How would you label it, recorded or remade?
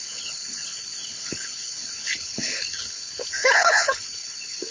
remade